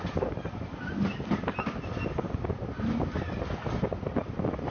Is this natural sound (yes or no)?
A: yes